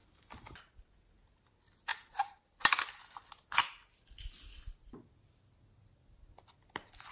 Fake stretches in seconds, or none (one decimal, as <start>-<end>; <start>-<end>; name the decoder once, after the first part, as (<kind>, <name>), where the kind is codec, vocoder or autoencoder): 0.0-0.6 (vocoder, BigVGAN v2); 1.9-3.0